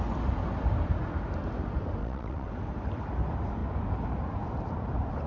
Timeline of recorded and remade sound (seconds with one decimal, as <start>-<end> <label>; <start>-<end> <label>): 0.0-2.0 recorded; 2.0-2.5 remade; 2.5-5.3 recorded